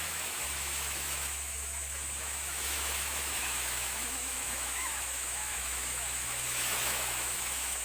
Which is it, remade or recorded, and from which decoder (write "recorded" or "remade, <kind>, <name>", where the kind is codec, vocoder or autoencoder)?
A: remade, autoencoder, DAC-VAE